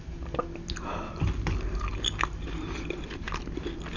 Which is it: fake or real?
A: real